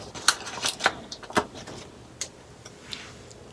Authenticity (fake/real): real